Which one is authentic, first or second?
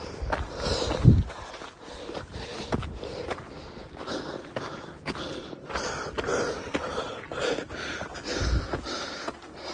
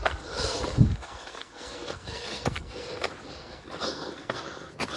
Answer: first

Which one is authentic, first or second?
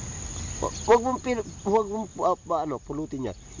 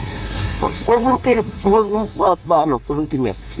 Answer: first